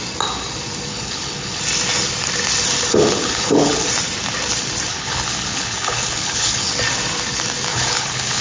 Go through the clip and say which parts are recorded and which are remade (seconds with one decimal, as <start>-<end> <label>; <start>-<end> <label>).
0.0-0.9 recorded; 0.9-1.6 remade; 1.6-2.9 recorded; 2.9-3.9 remade; 3.9-4.9 recorded; 4.9-6.7 remade; 6.7-7.7 recorded; 7.7-8.4 remade